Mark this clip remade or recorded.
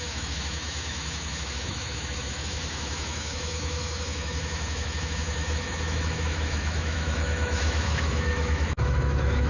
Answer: remade